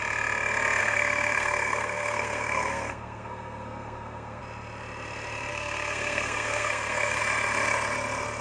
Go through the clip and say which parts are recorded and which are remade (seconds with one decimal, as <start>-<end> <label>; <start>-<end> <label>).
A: 0.0-0.8 recorded; 0.8-4.4 remade; 4.4-5.5 recorded; 5.5-7.2 remade; 7.2-8.4 recorded